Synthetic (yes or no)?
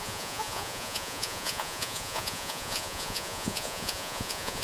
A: yes